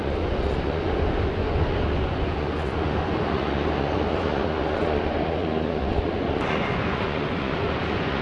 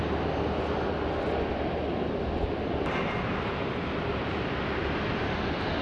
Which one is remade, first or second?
first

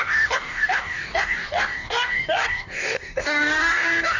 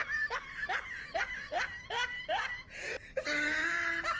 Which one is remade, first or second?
first